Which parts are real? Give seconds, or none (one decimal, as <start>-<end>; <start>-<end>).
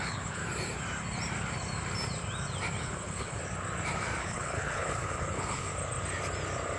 0.4-2.8; 3.4-4.2; 5.7-6.8